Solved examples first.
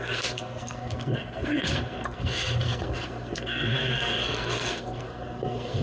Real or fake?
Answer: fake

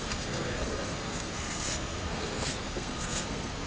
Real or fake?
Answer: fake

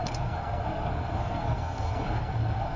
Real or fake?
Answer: fake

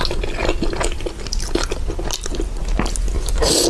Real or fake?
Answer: real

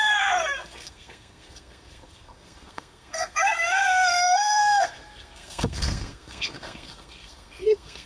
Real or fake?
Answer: fake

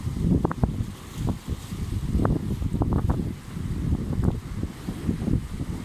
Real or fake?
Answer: real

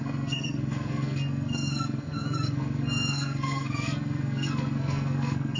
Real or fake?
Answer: fake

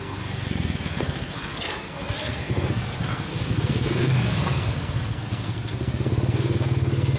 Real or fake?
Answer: fake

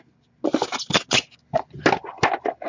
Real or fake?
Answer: real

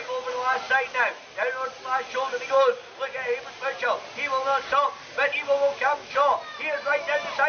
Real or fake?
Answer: real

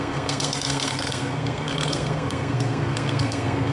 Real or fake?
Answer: fake